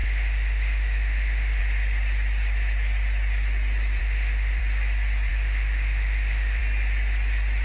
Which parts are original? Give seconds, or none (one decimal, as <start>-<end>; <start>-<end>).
1.6-4.0; 4.6-5.3; 6.6-7.6